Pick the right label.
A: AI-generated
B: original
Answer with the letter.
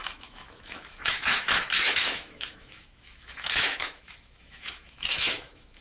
A